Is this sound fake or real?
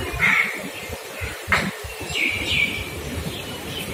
fake